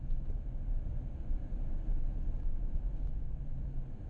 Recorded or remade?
recorded